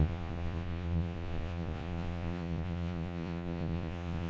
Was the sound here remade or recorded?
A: remade